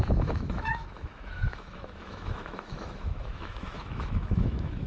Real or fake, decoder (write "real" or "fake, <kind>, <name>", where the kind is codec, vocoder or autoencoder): fake, autoencoder, DAC-VAE